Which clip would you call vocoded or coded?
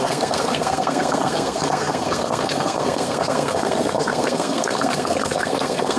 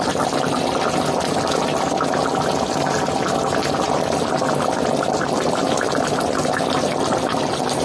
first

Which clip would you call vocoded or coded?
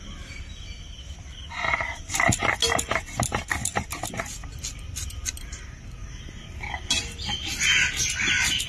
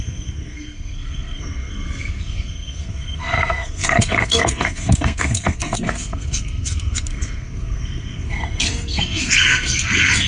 second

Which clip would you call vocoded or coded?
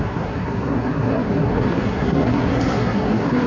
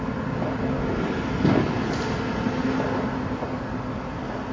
first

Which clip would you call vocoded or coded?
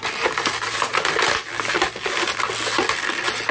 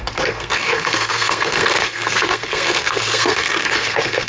second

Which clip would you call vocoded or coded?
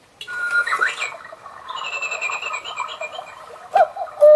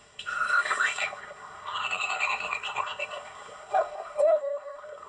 second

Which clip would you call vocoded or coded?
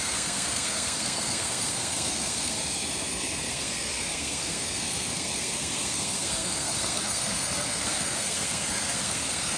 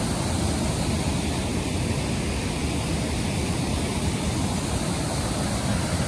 first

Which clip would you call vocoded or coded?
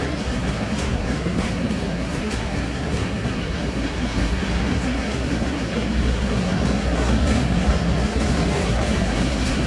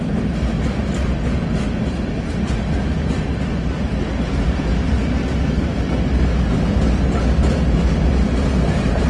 first